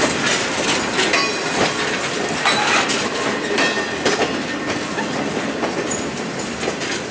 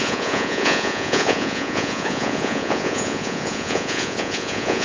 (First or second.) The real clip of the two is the first